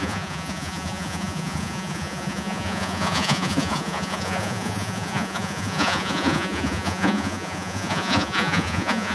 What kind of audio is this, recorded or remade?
remade